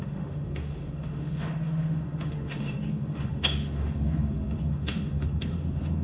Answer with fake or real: fake